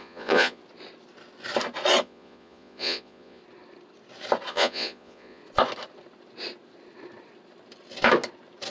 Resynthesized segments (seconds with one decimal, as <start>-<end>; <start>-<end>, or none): 0.0-0.6; 2.0-3.4; 4.5-5.4